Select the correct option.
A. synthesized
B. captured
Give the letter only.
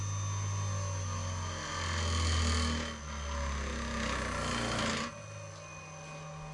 B